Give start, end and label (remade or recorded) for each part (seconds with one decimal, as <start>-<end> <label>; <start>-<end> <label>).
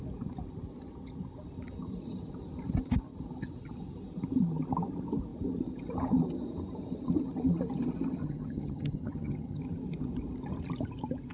0.0-8.2 recorded; 8.2-9.6 remade; 9.6-11.3 recorded